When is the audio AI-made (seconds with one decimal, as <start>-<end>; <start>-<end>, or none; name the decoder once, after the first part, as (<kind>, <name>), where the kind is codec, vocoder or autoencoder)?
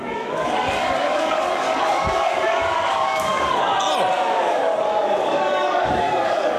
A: 0.0-3.7 (codec, DAC); 4.3-6.6